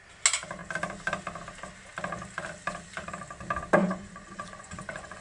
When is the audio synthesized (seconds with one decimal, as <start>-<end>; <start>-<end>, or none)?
3.8-5.2